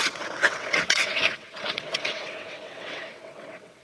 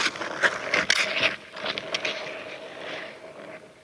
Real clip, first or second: second